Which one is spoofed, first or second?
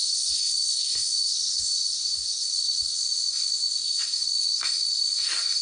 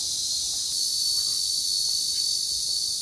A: first